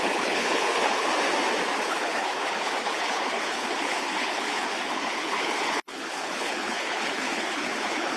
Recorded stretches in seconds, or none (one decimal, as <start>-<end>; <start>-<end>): 1.1-1.8